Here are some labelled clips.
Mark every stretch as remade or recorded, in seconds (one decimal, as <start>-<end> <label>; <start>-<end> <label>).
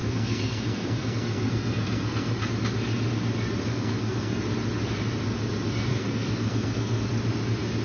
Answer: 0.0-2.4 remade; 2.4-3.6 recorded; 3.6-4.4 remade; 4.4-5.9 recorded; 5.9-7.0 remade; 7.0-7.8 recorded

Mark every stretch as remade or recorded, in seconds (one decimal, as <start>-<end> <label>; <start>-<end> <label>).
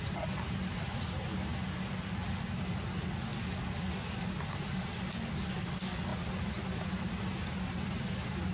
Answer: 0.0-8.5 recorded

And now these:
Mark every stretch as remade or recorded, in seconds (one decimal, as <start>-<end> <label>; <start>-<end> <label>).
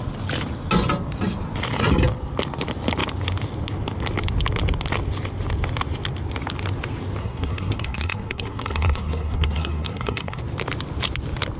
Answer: 0.0-7.2 recorded; 7.2-10.4 remade; 10.4-11.6 recorded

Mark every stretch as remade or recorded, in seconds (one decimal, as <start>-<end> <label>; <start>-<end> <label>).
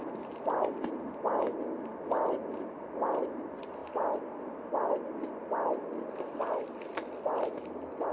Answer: 0.0-8.1 recorded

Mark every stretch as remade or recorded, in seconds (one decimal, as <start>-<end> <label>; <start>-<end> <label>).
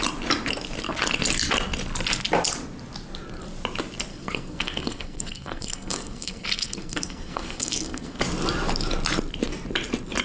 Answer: 0.0-4.1 recorded; 4.1-8.2 remade; 8.2-10.2 recorded